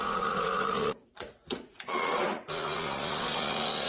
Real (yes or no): no